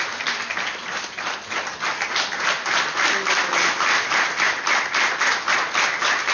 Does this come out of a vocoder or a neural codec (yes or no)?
no